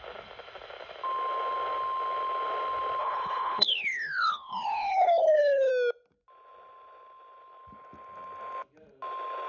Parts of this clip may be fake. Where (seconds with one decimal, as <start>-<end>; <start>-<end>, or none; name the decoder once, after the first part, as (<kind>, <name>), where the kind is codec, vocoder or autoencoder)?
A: 3.0-5.7 (codec, HILCodec)